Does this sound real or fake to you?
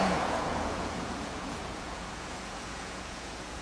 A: fake